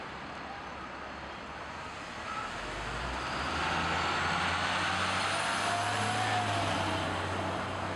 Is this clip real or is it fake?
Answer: real